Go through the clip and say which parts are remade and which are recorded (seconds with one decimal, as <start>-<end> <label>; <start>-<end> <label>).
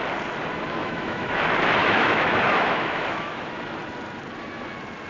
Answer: 0.0-0.8 recorded; 0.8-1.4 remade; 1.4-1.8 recorded; 1.8-3.4 remade; 3.4-5.1 recorded